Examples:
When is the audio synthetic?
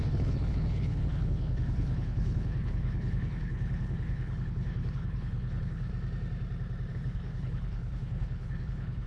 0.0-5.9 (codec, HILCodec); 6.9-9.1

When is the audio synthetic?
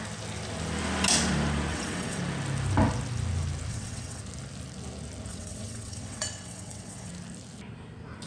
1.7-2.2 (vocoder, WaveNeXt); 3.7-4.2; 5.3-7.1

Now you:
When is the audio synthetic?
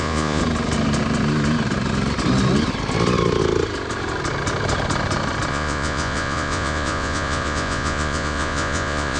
0.0-0.4 (vocoder, Vocos); 5.5-9.2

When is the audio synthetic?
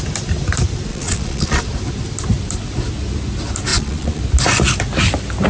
0.9-1.6 (vocoder, Vocos); 3.7-4.2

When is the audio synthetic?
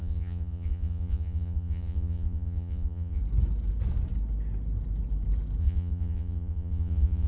0.0-3.2 (vocoder, Vocos); 5.6-7.3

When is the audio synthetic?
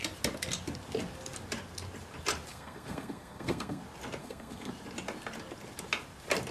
2.5-3.8 (codec, SNAC); 4.2-4.7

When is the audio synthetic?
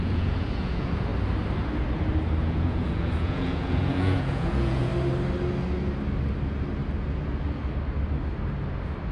0.0-1.1 (vocoder, Vocos); 2.4-4.9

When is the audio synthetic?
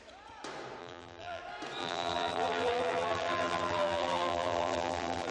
0.8-1.4 (vocoder, BigVGAN v2); 1.8-5.3